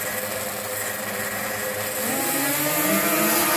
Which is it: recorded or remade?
recorded